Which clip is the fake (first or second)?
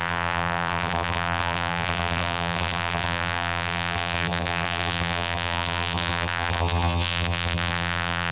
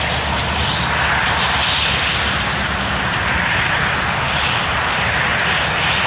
first